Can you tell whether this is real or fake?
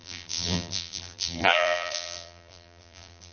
fake